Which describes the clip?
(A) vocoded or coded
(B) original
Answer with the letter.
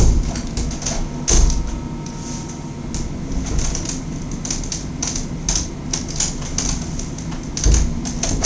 B